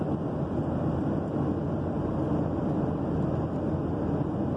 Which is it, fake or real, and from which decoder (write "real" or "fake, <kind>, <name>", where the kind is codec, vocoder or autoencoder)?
real